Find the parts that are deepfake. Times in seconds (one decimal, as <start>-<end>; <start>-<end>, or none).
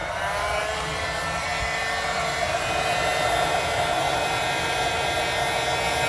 0.0-1.0; 1.5-5.2